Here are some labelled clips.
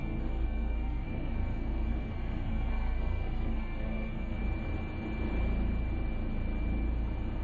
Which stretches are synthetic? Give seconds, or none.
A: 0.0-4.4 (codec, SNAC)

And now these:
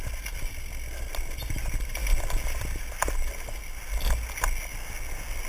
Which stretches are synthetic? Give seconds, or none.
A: none

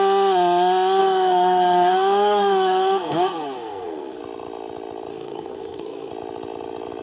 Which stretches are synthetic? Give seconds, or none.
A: 1.0-4.2 (codec, SNAC); 5.1-6.1

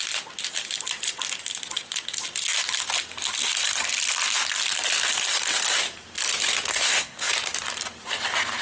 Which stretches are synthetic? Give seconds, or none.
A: 6.7-7.3 (codec, SNAC)